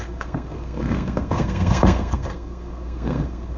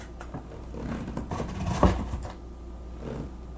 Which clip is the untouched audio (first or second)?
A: second